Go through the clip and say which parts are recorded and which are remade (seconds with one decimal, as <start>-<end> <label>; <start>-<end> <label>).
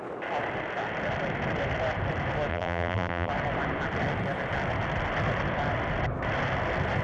0.0-2.5 recorded; 2.5-3.3 remade; 3.3-7.0 recorded